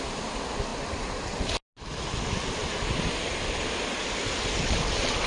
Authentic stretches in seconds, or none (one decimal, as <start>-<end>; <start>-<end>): 0.0-5.3